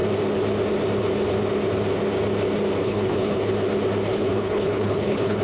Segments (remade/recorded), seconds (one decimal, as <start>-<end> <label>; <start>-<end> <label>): 0.0-2.8 recorded; 2.8-3.5 remade; 3.5-4.1 recorded; 4.1-5.4 remade